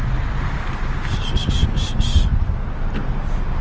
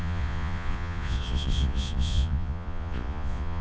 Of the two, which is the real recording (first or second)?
first